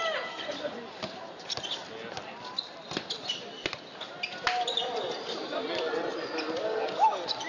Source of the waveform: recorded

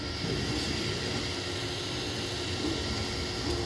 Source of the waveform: recorded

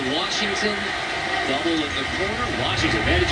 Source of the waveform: recorded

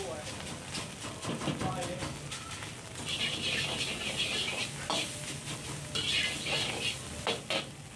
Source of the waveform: recorded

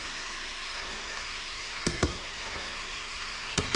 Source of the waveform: remade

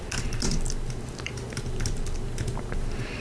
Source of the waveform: recorded